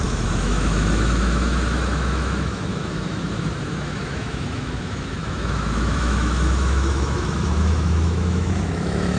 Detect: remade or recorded remade